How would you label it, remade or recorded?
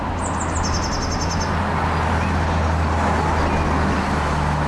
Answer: recorded